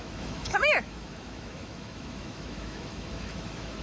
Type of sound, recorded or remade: remade